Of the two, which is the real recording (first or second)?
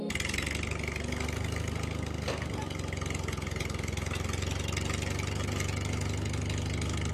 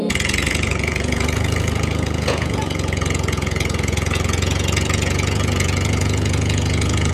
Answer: first